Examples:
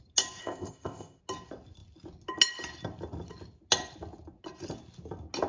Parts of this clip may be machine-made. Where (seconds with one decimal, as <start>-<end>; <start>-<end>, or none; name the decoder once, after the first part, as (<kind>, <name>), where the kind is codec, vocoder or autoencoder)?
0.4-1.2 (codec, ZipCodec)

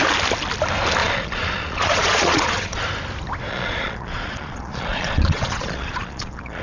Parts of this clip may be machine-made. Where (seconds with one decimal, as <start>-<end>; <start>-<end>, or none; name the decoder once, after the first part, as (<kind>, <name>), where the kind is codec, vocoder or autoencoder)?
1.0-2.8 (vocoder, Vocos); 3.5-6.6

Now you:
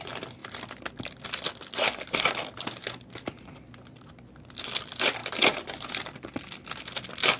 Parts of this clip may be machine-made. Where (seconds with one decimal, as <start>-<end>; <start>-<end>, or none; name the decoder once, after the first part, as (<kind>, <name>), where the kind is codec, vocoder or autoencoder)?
0.4-2.3 (vocoder, BigVGAN v2); 5.2-6.8